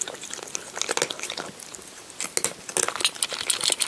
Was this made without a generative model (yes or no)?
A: yes